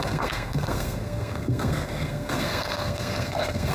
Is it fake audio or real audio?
fake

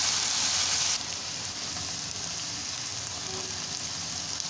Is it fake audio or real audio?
real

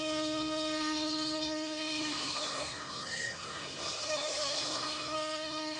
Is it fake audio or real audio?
fake